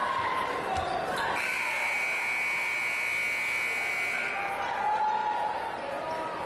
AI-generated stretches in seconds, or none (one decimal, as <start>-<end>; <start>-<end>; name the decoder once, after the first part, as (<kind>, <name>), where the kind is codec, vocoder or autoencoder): none

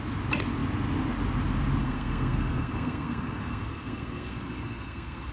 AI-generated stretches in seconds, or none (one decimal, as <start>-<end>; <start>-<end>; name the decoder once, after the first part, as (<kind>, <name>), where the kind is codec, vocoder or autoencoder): 1.8-5.3 (codec, SNAC)

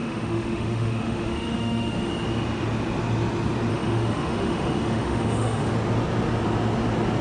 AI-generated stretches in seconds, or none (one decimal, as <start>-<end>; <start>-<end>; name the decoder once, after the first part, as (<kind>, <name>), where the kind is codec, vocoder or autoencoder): 0.0-2.1 (autoencoder, DAC-VAE); 3.7-5.7

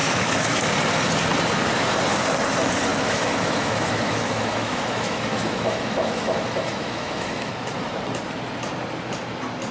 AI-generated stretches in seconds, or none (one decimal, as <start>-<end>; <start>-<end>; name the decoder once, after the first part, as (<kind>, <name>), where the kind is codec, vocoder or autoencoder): 0.0-0.7 (autoencoder, DAC-VAE); 2.9-7.5

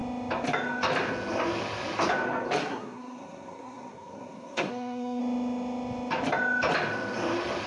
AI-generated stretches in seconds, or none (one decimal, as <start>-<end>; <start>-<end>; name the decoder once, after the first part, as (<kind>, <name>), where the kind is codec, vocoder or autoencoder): 2.6-5.2 (codec, SNAC)